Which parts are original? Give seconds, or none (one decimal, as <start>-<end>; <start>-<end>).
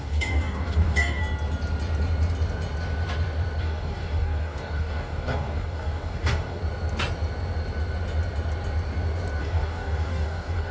1.2-3.6; 6.6-9.4